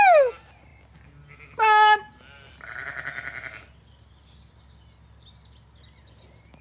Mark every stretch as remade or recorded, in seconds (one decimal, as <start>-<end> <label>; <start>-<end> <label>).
0.0-6.6 recorded